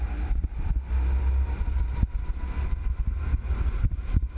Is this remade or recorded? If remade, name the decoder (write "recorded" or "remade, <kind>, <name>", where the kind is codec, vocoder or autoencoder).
recorded